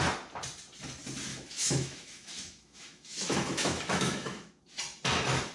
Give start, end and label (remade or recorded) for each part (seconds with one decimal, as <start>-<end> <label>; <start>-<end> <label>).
0.0-1.3 recorded; 1.3-4.6 remade; 4.6-5.5 recorded